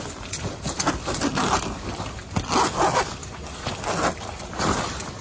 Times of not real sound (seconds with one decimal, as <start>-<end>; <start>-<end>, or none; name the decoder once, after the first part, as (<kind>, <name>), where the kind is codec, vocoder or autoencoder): none